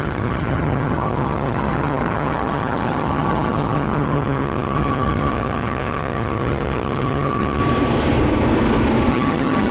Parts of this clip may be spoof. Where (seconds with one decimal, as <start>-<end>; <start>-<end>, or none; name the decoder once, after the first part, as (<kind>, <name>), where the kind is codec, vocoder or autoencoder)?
0.0-7.6 (vocoder, HiFi-GAN); 9.1-9.7